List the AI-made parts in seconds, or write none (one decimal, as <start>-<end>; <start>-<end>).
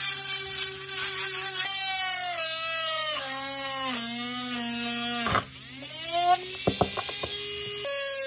none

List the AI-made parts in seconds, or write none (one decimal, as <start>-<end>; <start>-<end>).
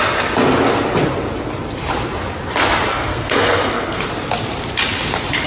2.9-4.0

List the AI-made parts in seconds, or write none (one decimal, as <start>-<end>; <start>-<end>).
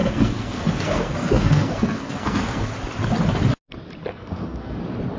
0.0-2.7; 4.1-4.8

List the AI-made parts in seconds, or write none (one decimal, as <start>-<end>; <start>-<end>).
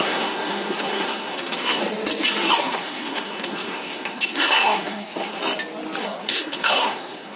0.0-1.8; 2.6-5.4; 6.0-7.4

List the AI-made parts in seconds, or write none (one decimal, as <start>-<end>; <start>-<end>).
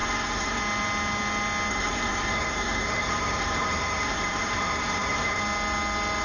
0.0-0.6; 1.7-5.4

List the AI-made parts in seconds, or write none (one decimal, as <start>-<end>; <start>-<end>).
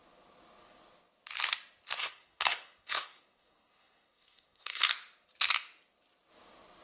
2.0-4.9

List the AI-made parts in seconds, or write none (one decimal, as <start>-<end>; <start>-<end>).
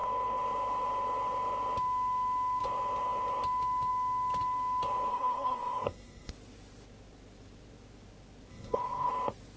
5.1-6.3; 8.5-9.1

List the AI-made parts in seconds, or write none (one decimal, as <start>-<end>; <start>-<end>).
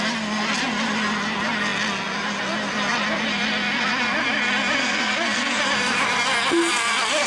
4.8-5.6